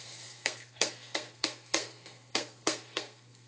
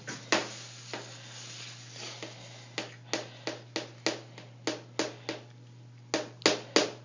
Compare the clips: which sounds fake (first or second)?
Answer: first